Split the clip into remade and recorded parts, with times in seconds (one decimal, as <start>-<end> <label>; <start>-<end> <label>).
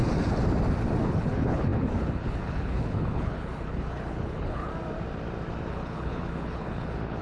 0.0-1.0 recorded; 1.0-4.7 remade; 4.7-5.7 recorded; 5.7-7.2 remade